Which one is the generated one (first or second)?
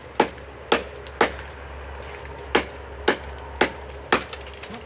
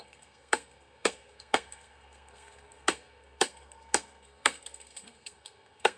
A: second